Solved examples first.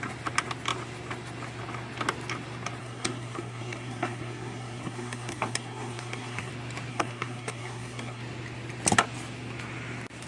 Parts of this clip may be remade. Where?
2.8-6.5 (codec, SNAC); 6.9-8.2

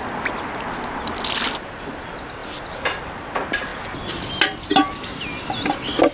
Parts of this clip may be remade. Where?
none

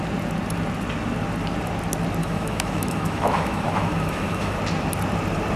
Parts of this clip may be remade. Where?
2.2-4.6 (autoencoder, DAC-VAE)

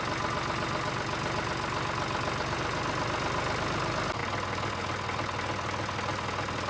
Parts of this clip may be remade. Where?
none